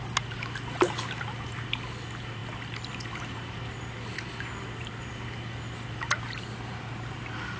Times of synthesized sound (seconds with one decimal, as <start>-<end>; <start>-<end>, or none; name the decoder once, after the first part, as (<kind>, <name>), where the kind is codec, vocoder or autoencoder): none